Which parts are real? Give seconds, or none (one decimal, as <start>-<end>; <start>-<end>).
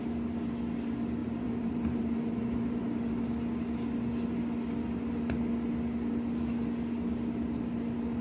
0.0-1.2; 3.1-8.2